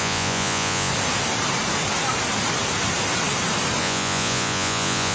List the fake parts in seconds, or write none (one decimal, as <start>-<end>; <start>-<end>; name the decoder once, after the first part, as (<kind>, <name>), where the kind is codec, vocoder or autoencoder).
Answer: 0.0-0.9 (vocoder, Vocos); 3.8-5.1